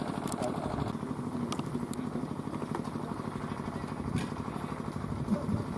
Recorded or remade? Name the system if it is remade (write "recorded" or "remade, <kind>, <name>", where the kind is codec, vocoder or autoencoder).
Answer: recorded